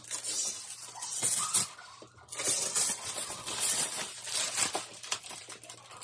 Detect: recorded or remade recorded